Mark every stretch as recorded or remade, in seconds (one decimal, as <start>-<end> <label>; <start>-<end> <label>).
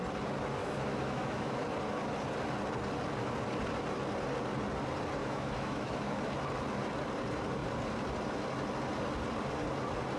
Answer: 0.0-0.6 recorded; 0.6-1.6 remade; 1.6-5.2 recorded; 5.2-6.2 remade; 6.2-10.2 recorded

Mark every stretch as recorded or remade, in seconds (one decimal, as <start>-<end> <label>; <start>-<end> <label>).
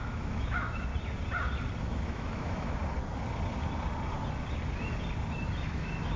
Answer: 0.0-0.9 remade; 0.9-1.8 recorded; 1.8-2.8 remade; 2.8-5.7 recorded; 5.7-6.2 remade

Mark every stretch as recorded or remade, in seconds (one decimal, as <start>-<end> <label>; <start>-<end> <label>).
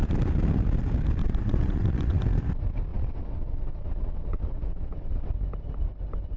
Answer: 0.0-1.2 recorded; 1.2-2.2 remade; 2.2-2.9 recorded; 2.9-5.3 remade; 5.3-6.4 recorded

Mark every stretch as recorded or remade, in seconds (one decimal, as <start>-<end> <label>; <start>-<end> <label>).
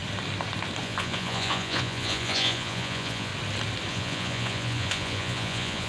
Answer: 0.0-0.8 recorded; 0.8-3.3 remade; 3.3-3.9 recorded; 3.9-5.9 remade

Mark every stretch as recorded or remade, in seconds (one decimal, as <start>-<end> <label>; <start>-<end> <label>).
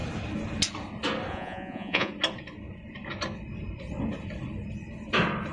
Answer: 0.0-1.3 recorded; 1.3-2.1 remade; 2.1-5.5 recorded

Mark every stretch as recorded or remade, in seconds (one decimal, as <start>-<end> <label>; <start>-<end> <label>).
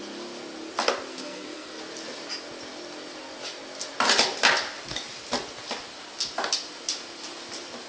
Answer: 0.0-1.1 recorded; 1.1-1.8 remade; 1.8-7.9 recorded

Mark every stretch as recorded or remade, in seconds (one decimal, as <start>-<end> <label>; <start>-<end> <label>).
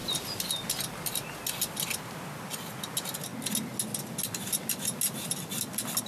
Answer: 0.0-6.1 recorded